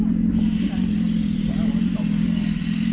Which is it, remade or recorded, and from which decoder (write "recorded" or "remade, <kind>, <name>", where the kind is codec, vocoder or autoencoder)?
recorded